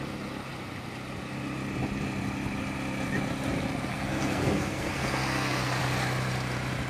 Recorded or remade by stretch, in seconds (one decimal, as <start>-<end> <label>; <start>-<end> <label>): 0.0-3.9 recorded; 3.9-5.8 remade; 5.8-6.9 recorded